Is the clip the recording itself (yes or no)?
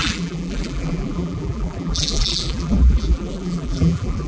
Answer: no